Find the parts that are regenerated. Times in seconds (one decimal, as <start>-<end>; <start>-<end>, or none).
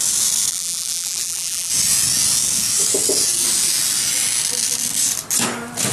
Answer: 0.5-1.7